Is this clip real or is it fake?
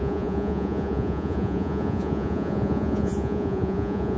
fake